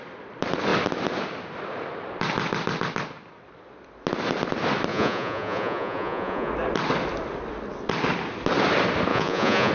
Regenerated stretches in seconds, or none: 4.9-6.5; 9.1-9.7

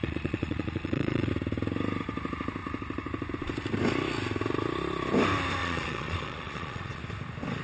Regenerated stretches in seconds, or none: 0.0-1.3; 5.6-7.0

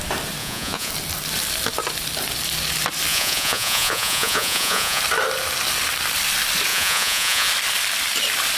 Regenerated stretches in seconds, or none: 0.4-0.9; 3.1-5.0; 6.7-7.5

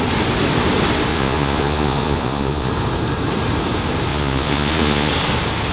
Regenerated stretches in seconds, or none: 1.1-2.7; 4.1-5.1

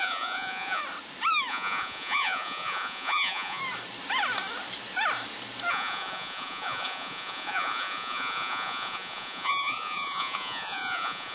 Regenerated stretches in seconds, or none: 0.0-0.8; 1.5-3.6; 5.7-11.3

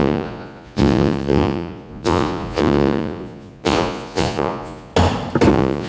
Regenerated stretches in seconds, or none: 0.0-4.9; 5.5-5.9